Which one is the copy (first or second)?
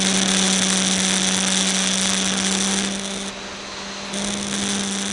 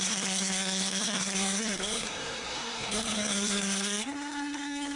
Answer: second